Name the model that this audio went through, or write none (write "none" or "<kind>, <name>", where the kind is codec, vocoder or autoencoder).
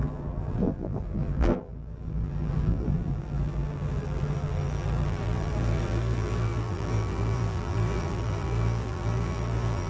vocoder, BigVGAN v2